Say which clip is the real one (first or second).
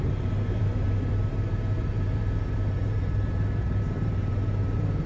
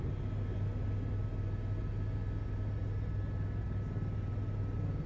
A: second